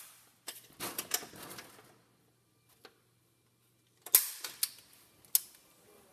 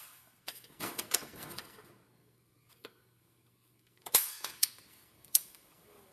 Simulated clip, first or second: second